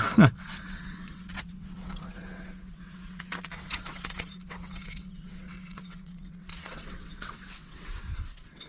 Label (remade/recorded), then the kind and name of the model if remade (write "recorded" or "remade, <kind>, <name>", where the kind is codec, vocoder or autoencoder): remade, vocoder, WaveNeXt